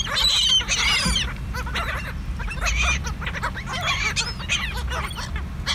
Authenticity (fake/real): real